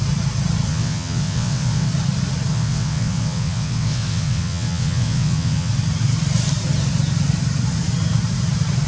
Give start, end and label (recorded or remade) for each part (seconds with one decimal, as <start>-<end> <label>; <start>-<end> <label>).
0.0-0.7 recorded; 0.7-1.9 remade; 1.9-2.5 recorded; 2.5-5.7 remade; 5.7-8.9 recorded